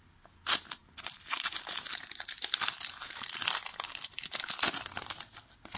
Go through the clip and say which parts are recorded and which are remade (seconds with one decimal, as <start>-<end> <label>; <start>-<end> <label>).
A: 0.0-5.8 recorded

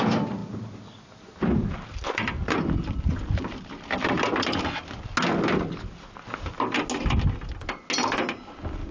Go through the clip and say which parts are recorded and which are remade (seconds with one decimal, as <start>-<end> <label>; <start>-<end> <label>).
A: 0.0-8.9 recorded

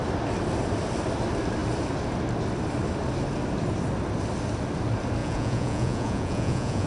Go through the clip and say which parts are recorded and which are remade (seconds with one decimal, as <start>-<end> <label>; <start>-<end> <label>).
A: 0.0-5.2 recorded; 5.2-6.9 remade

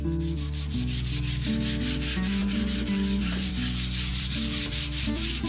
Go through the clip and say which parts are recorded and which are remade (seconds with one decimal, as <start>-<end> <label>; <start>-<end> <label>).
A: 0.0-2.4 recorded; 2.4-3.5 remade; 3.5-4.1 recorded; 4.1-5.5 remade

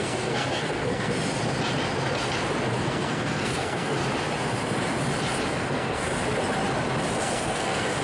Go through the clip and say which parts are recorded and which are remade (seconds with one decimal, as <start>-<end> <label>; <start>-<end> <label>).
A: 0.0-1.1 remade; 1.1-2.8 recorded; 2.8-4.0 remade; 4.0-5.5 recorded; 5.5-6.1 remade; 6.1-7.2 recorded; 7.2-8.0 remade

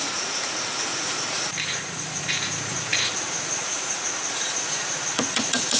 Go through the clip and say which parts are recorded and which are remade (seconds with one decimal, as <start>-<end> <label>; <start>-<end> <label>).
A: 0.0-5.8 remade

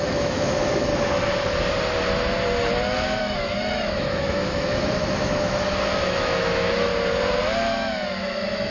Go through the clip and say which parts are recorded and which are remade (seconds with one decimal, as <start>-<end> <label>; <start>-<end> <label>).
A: 0.0-0.9 remade; 0.9-3.2 recorded; 3.2-6.9 remade; 6.9-8.2 recorded; 8.2-8.7 remade